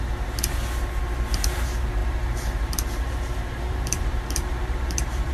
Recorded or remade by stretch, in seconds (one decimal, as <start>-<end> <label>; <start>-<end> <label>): 0.0-2.0 recorded; 2.0-5.3 remade